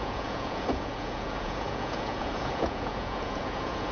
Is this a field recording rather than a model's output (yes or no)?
no